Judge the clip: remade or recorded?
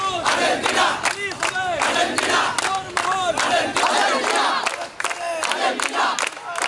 recorded